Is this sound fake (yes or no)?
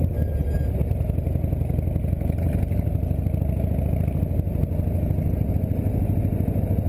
no